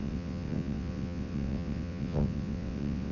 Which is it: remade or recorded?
remade